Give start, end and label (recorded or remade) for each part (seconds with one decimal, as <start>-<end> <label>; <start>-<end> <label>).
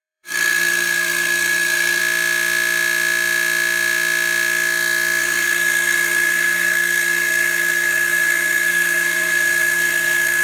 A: 0.0-2.0 remade; 2.0-5.2 recorded; 5.2-10.4 remade